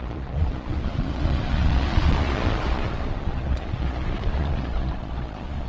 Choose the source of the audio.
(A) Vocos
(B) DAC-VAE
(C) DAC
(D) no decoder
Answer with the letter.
A